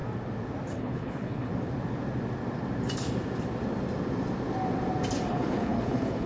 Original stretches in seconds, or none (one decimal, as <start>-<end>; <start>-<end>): 0.0-0.7; 1.5-5.3